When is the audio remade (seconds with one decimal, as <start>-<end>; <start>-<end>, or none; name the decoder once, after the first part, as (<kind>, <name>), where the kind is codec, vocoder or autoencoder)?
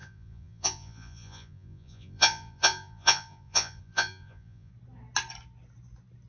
0.0-4.7 (vocoder, Vocos)